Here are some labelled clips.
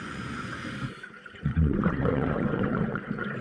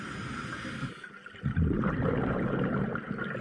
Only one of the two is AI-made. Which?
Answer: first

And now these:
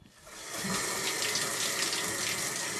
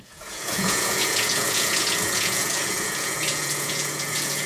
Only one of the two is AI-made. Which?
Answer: second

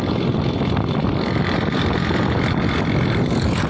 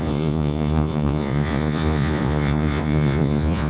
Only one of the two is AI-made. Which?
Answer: second